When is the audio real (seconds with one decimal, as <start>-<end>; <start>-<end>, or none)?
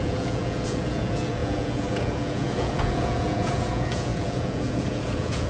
none